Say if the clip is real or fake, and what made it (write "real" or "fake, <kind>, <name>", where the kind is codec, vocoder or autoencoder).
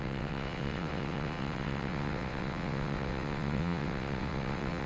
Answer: fake, vocoder, WaveNeXt